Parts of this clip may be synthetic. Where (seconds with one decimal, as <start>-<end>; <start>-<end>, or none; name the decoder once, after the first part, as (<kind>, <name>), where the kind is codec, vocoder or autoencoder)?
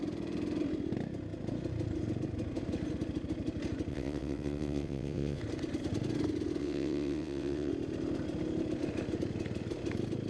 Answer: 3.9-5.4 (vocoder, WaveNeXt); 6.6-7.7